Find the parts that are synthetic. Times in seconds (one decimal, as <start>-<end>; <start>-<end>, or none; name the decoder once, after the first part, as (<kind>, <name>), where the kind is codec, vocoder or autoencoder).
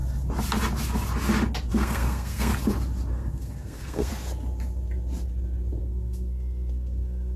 1.7-2.5 (codec, SNAC); 3.1-4.1; 5.8-7.4